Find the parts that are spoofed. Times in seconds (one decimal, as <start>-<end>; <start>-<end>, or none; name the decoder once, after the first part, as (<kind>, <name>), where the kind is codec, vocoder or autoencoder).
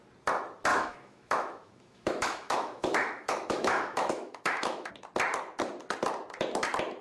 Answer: 0.7-4.9 (autoencoder, DAC-VAE)